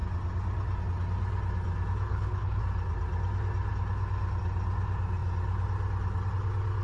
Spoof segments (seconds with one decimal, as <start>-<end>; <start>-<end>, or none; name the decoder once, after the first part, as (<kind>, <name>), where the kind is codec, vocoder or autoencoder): 2.1-2.6 (codec, HILCodec)